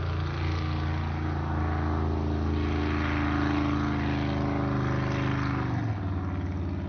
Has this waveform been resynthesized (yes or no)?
no